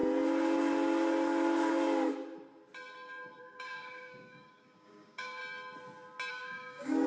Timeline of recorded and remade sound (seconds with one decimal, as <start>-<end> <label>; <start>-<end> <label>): 0.0-3.4 recorded; 3.4-5.4 remade; 5.4-6.3 recorded; 6.3-7.1 remade